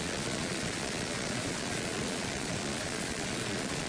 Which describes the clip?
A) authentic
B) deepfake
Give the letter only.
B